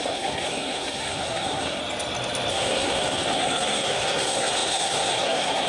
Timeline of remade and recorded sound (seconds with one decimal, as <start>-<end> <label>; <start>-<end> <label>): 0.0-1.8 remade; 1.8-2.5 recorded; 2.5-5.7 remade